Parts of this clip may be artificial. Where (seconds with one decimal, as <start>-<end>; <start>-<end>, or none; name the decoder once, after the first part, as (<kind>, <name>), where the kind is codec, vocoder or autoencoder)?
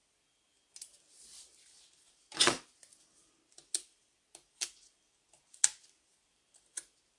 none